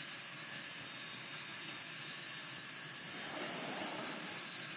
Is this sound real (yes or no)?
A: yes